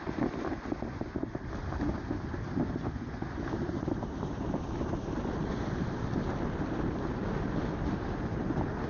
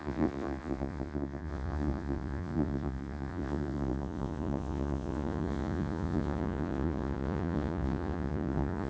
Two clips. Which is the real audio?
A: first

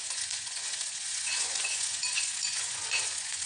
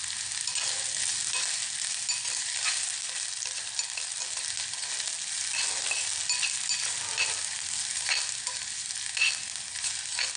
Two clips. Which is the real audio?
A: second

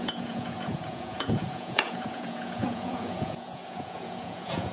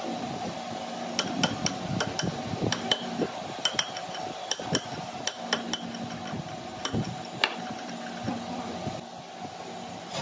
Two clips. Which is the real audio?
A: second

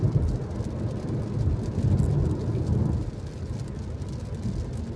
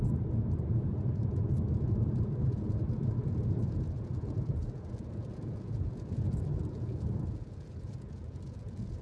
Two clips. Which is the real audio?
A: first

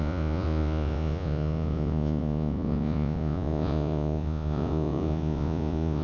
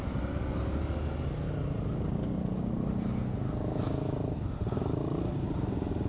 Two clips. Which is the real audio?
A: second